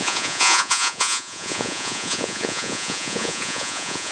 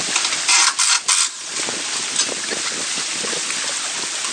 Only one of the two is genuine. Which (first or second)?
second